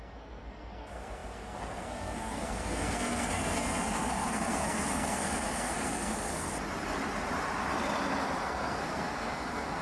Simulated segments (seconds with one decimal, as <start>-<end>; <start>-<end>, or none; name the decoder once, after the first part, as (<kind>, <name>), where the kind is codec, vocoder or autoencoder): 0.0-6.5 (codec, SNAC); 8.4-9.8